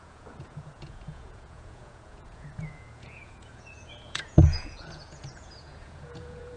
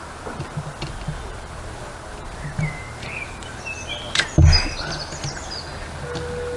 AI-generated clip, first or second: first